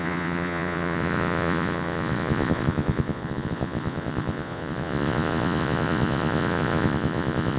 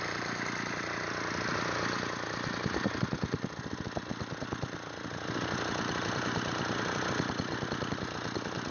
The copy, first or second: first